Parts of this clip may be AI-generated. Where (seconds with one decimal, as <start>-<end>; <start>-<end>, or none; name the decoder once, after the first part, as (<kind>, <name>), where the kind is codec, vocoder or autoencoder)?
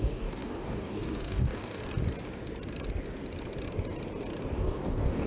0.0-1.8 (codec, DAC); 4.6-5.3